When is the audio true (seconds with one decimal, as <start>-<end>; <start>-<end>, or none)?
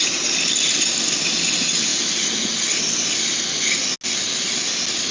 0.0-5.1